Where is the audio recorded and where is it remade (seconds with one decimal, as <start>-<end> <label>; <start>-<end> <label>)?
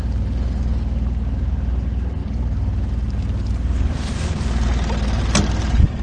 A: 0.0-6.0 recorded